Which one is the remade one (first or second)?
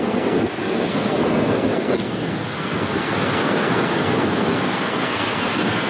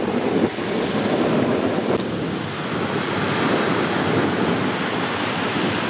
first